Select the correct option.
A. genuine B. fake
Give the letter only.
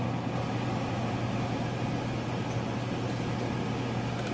A